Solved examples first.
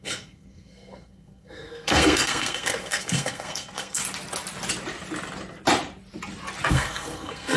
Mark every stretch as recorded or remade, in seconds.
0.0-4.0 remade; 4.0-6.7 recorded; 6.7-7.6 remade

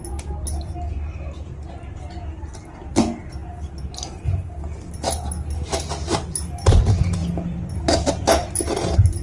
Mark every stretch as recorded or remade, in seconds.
0.0-9.2 recorded